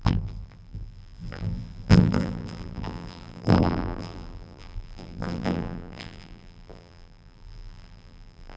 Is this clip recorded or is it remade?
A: remade